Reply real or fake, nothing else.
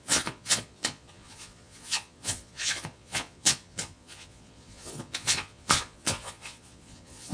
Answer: fake